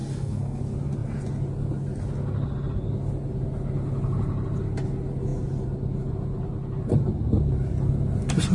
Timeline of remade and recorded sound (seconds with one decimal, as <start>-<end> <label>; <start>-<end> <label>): 0.0-0.6 remade; 0.6-8.5 recorded